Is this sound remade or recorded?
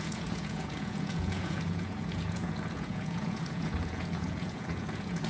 remade